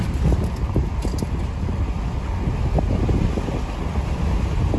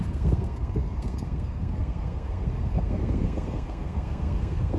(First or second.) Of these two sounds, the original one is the first